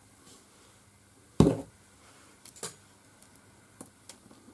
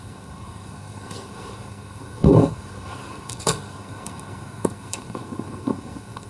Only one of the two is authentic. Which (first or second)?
first